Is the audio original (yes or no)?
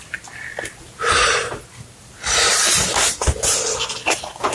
yes